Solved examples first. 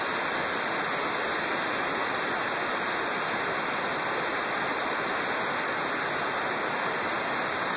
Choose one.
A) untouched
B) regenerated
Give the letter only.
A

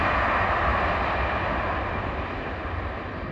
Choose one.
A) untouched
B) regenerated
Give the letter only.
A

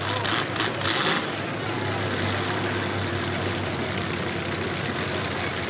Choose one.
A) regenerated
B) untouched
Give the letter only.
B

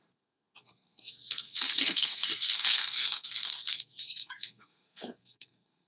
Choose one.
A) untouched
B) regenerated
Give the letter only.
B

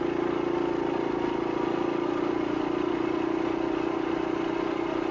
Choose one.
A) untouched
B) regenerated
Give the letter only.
A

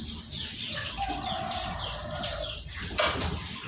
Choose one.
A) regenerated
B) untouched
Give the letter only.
A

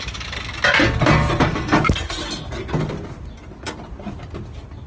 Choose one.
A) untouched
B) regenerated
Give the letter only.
A